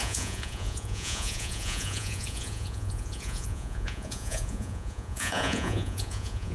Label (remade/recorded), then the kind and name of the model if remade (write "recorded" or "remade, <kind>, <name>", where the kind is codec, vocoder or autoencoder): remade, vocoder, Vocos